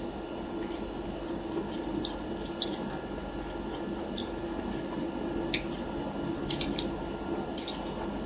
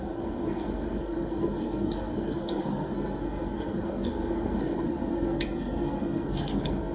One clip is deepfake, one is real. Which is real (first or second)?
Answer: first